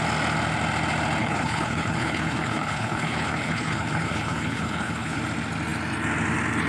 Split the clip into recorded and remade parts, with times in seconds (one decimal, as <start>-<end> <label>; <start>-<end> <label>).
0.0-1.2 recorded; 1.2-5.2 remade; 5.2-6.7 recorded